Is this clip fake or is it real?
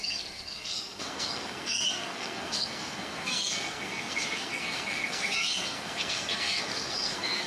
fake